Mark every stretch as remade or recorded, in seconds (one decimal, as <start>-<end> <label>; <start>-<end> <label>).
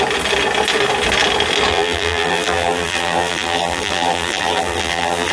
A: 0.0-1.7 recorded; 1.7-5.3 remade